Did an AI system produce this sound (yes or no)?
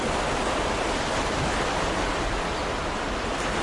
no